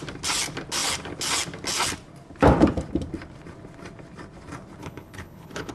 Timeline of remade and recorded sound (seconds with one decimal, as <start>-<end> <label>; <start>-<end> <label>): 0.0-4.8 recorded; 4.8-5.7 remade